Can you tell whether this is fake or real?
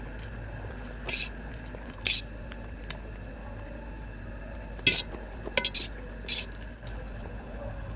real